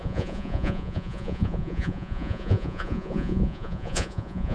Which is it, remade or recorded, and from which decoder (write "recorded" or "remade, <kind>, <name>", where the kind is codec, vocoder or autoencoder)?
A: remade, vocoder, Vocos